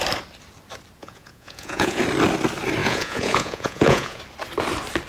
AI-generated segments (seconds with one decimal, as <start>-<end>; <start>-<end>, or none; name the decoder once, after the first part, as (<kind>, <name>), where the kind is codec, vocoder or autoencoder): 1.0-2.0 (vocoder, Vocos); 2.8-4.2